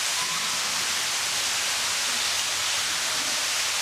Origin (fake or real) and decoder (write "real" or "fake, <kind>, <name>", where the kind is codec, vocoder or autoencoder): real